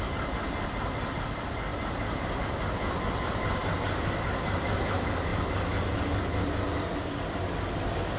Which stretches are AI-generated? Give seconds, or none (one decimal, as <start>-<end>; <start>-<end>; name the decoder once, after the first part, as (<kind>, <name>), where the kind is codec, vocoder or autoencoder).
none

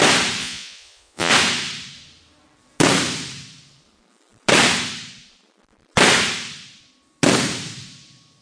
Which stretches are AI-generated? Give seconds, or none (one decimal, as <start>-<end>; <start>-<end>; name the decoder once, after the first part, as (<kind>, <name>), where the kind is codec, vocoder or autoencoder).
0.4-1.3 (vocoder, Vocos)

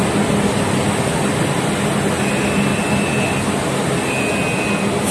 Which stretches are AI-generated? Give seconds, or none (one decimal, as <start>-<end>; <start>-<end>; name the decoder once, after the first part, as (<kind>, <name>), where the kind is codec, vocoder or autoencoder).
none